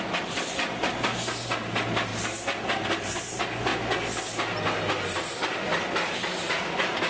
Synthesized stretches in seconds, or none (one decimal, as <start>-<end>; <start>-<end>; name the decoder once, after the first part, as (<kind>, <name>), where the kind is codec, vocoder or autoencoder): none